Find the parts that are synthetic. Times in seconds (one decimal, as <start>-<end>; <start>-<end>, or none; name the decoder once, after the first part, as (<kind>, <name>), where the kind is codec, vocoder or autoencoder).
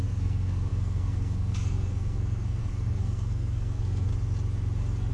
0.0-4.1 (codec, SNAC)